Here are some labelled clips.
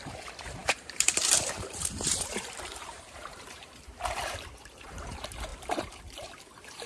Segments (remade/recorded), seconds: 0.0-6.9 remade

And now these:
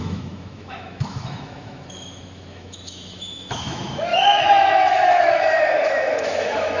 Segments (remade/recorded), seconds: 0.0-6.8 remade

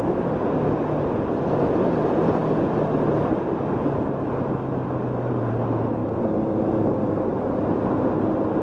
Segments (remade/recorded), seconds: 0.0-6.0 recorded; 6.0-7.4 remade; 7.4-8.6 recorded

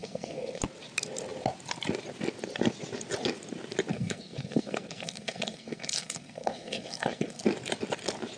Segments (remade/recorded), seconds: 0.0-0.6 remade; 0.6-3.9 recorded; 3.9-7.4 remade; 7.4-8.4 recorded

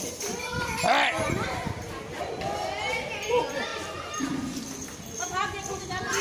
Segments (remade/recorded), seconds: 0.0-6.2 recorded

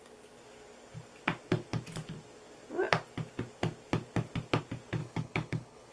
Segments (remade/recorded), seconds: 0.0-5.0 recorded; 5.0-5.9 remade

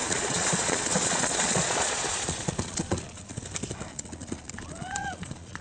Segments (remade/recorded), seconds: 0.0-3.4 remade; 3.4-3.9 recorded; 3.9-5.6 remade